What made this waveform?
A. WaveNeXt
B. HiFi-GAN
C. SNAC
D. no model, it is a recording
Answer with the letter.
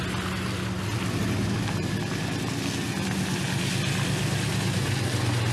D